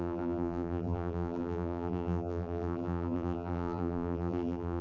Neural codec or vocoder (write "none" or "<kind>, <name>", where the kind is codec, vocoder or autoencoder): vocoder, BigVGAN v2